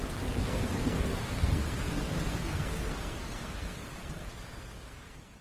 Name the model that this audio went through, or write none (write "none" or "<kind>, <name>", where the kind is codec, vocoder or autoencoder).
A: codec, SNAC